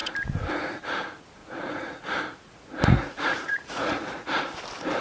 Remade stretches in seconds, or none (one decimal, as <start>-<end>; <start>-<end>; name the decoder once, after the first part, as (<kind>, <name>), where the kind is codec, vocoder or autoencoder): 1.4-4.4 (vocoder, Vocos)